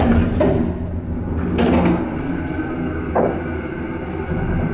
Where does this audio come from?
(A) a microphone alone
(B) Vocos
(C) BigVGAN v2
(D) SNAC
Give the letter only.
A